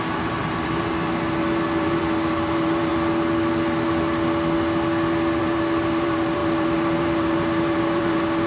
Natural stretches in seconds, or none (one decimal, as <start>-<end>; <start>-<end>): 2.9-5.4